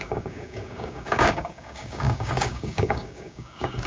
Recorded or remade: remade